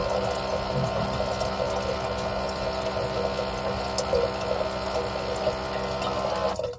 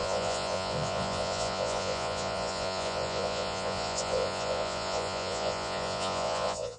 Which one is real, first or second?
first